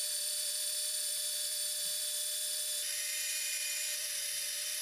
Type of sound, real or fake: fake